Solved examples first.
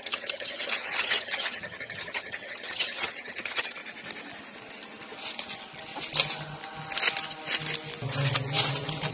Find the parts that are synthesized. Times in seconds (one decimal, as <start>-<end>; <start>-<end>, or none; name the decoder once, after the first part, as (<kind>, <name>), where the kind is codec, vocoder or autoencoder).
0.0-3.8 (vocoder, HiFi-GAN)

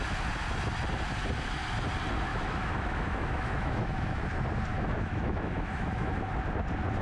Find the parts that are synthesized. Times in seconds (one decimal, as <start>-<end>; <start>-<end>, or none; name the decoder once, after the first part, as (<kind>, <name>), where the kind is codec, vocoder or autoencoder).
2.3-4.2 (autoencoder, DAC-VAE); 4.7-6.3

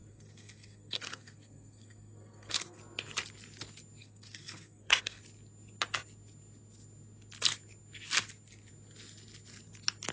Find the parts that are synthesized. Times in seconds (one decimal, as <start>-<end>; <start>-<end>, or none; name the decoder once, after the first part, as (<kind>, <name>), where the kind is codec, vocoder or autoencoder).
0.0-2.8 (codec, SNAC); 4.0-5.2